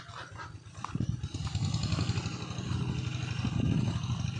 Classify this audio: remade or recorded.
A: recorded